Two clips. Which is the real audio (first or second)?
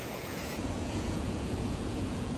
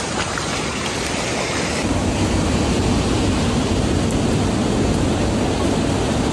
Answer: second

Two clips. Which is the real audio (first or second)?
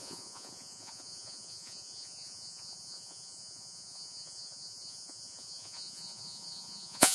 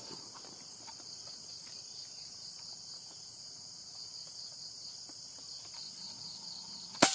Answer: second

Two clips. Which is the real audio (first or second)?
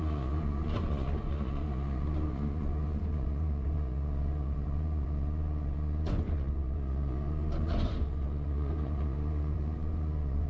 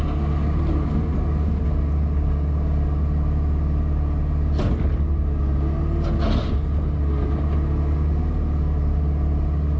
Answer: second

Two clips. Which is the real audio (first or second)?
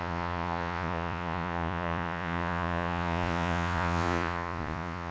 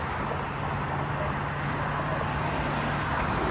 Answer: second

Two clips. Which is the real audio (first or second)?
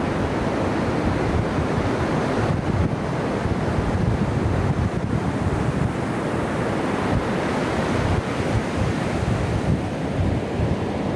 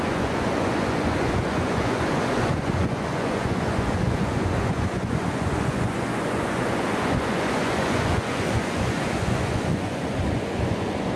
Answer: first